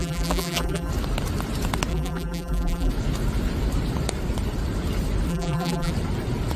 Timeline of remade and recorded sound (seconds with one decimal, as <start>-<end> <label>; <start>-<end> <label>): 0.0-0.9 remade; 0.9-1.9 recorded; 1.9-2.9 remade; 2.9-5.3 recorded; 5.3-5.9 remade; 5.9-6.6 recorded